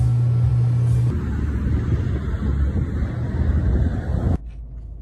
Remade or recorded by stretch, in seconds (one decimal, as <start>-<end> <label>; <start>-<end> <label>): 0.0-5.0 recorded